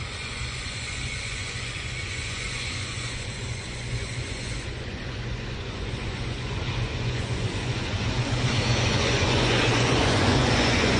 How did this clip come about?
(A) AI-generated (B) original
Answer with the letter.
A